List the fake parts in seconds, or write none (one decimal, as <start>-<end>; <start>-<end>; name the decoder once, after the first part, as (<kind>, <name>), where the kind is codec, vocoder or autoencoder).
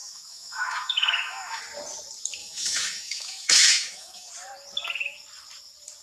0.0-1.6 (autoencoder, DAC-VAE); 2.4-4.3